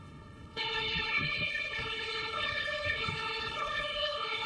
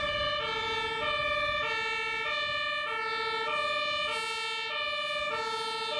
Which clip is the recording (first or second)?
second